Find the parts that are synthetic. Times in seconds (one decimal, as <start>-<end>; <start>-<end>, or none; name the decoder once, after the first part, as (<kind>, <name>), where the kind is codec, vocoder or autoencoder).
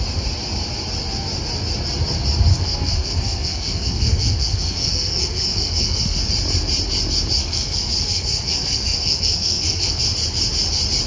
2.5-6.2 (codec, SNAC); 7.4-10.0